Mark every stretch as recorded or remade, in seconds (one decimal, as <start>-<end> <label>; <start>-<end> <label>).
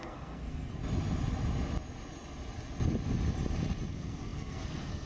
0.0-0.8 remade; 0.8-3.9 recorded; 3.9-5.1 remade